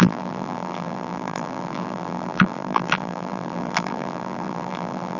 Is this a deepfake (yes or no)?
yes